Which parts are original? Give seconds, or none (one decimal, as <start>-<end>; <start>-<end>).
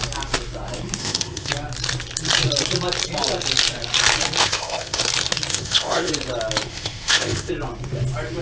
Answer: 0.0-1.0; 1.5-4.4; 5.0-5.5; 6.1-6.7; 7.5-8.4